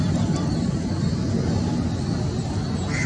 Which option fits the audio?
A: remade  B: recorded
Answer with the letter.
B